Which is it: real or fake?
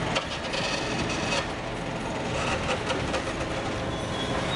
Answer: real